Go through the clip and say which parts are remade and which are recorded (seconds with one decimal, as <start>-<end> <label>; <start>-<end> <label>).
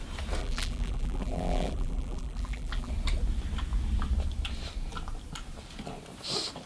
0.0-0.4 recorded; 0.4-2.9 remade; 2.9-6.7 recorded